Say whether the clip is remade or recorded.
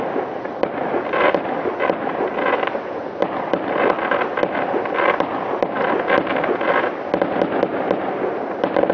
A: recorded